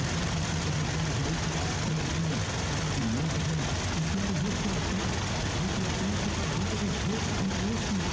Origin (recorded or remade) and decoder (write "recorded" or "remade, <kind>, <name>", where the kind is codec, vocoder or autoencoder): recorded